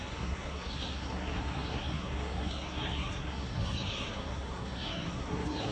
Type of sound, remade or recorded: remade